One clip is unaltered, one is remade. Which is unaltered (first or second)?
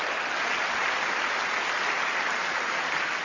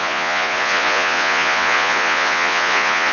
first